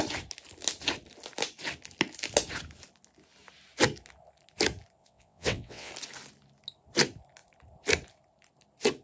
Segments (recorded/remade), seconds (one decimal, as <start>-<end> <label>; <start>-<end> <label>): 0.0-5.0 recorded; 5.0-5.9 remade; 5.9-9.0 recorded